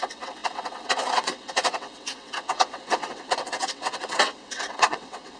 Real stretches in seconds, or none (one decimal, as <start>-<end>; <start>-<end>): none

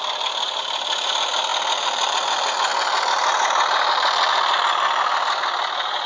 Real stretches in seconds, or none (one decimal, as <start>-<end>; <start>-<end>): 0.0-6.1

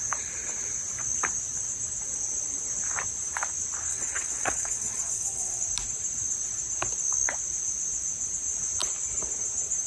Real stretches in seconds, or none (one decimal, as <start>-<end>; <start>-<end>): 0.0-3.9; 5.6-9.9